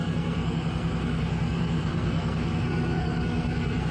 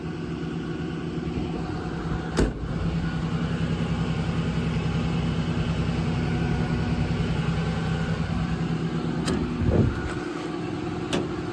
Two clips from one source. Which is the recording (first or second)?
second